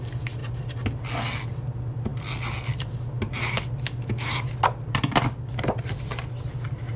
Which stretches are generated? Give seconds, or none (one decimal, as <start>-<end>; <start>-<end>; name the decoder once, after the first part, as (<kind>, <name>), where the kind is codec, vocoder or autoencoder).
none